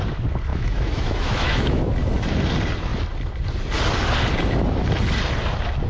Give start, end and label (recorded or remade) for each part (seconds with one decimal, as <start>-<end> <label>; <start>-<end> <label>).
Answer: 0.0-0.5 recorded; 0.5-1.8 remade; 1.8-5.9 recorded